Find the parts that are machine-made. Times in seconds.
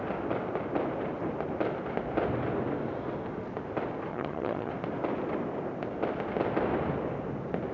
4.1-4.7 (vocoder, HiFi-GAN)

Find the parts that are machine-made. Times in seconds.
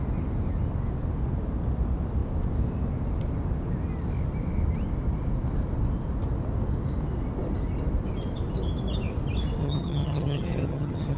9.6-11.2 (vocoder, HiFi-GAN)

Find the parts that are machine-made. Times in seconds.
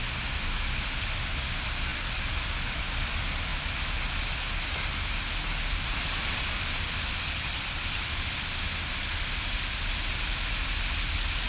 none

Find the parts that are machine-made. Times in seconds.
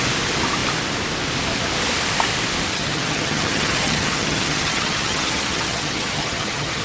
2.7-6.8 (vocoder, HiFi-GAN)